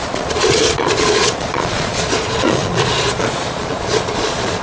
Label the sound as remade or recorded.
remade